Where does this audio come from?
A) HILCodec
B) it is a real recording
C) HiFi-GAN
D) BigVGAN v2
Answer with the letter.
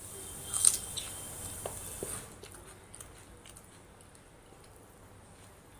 B